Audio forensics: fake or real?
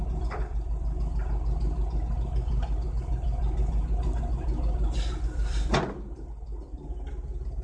real